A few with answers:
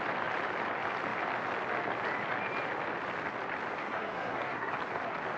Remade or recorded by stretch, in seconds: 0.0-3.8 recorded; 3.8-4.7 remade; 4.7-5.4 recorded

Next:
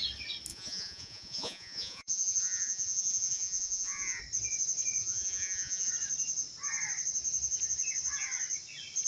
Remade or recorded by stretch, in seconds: 0.0-0.5 recorded; 0.5-4.2 remade; 4.2-5.0 recorded; 5.0-5.9 remade; 5.9-9.1 recorded

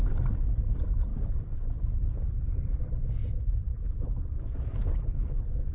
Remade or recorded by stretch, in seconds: 0.0-1.1 recorded; 1.1-3.1 remade; 3.1-5.7 recorded